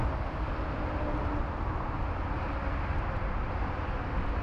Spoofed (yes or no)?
no